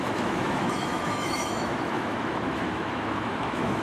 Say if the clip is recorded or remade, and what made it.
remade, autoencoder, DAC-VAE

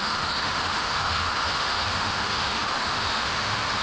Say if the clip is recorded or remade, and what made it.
remade, autoencoder, DAC-VAE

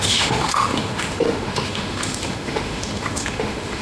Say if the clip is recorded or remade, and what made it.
remade, autoencoder, DAC-VAE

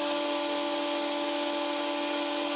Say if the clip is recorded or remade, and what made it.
recorded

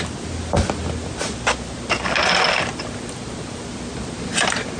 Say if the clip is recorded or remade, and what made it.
recorded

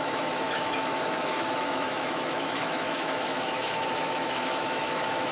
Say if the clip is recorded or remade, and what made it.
remade, autoencoder, DAC-VAE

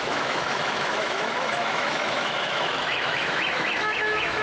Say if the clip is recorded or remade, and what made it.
remade, autoencoder, DAC-VAE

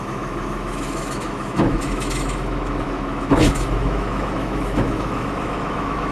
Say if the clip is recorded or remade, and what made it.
remade, autoencoder, DAC-VAE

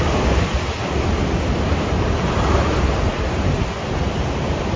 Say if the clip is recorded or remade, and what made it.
recorded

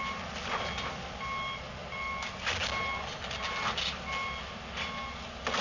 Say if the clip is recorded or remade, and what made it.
recorded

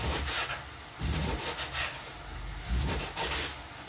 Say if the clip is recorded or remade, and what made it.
recorded